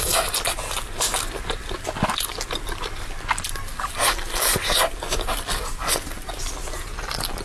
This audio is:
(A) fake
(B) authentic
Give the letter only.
B